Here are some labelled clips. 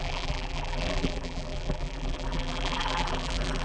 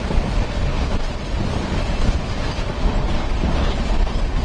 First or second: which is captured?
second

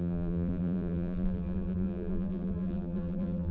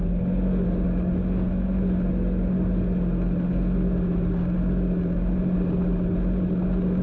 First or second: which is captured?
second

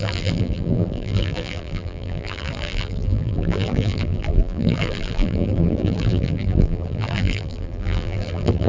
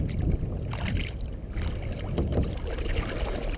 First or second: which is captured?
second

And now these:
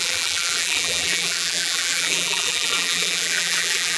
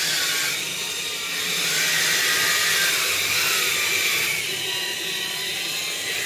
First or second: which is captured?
second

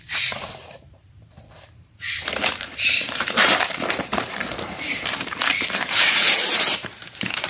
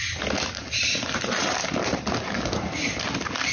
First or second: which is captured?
second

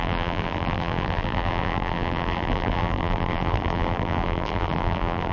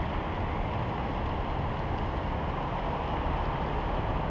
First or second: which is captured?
second